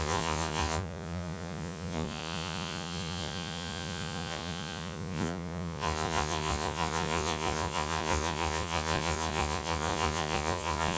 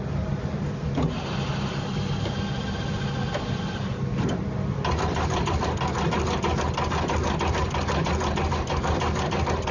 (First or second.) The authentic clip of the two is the second